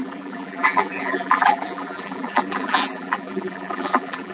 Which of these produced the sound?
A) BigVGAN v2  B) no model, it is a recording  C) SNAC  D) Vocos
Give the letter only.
A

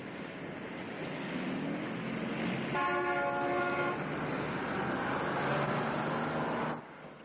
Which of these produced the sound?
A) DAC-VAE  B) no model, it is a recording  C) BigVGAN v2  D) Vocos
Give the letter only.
B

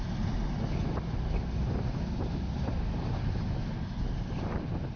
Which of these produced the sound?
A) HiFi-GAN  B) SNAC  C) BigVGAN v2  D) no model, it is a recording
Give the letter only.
D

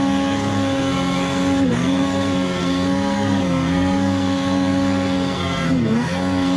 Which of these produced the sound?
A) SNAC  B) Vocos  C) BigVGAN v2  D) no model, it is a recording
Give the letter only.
A